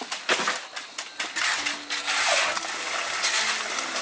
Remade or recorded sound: recorded